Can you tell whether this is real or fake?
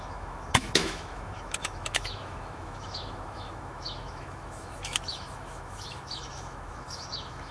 fake